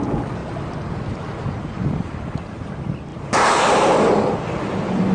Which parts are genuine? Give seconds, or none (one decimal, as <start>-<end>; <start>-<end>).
0.0-5.1